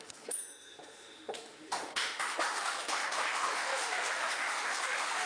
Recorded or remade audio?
remade